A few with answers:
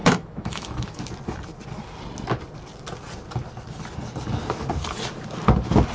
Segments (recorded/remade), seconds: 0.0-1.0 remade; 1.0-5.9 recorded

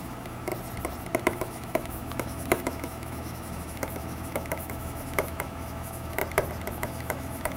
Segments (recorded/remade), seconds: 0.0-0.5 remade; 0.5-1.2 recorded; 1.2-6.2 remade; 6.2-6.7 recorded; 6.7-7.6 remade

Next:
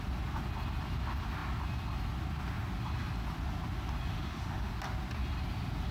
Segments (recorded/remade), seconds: 0.0-4.1 recorded; 4.1-4.7 remade; 4.7-5.9 recorded